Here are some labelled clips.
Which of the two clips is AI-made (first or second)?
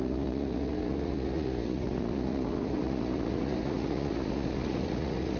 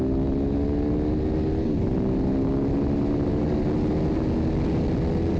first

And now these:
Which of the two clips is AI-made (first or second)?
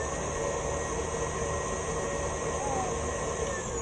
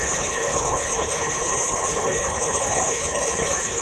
second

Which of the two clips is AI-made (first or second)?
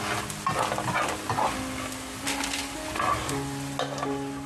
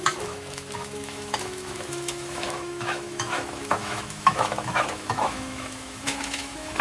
second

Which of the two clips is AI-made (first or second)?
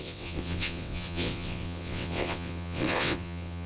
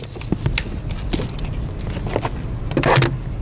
first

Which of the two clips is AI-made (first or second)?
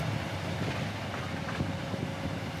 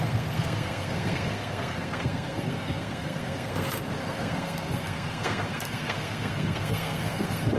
second